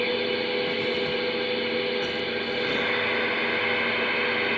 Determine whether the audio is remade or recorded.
recorded